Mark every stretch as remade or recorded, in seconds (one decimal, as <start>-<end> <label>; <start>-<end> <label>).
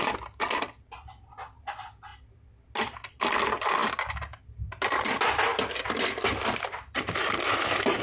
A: 0.0-8.0 recorded